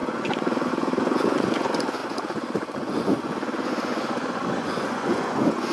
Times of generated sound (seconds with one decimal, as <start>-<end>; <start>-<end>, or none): 0.0-5.7